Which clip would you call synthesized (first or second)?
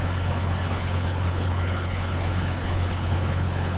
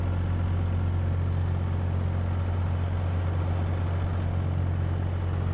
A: first